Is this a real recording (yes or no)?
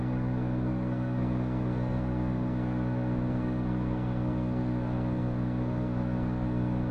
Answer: no